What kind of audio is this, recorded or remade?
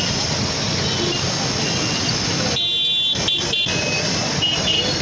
recorded